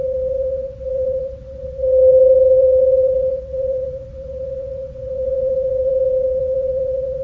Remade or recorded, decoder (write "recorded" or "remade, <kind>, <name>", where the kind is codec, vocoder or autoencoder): remade, vocoder, WaveNeXt